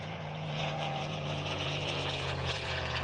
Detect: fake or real fake